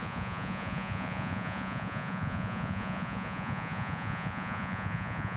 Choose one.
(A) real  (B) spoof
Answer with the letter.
B